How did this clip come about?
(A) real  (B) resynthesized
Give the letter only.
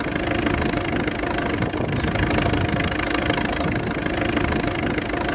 A